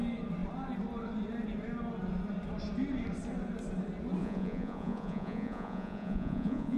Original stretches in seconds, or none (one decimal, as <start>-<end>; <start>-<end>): 0.0-4.2